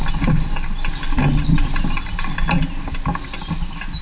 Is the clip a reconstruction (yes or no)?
no